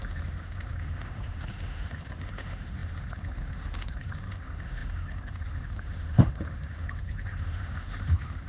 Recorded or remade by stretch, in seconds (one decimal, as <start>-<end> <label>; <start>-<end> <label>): 0.0-8.5 remade